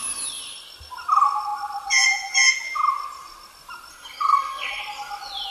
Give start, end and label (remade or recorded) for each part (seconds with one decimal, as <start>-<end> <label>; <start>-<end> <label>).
0.0-3.9 recorded; 3.9-4.8 remade; 4.8-5.5 recorded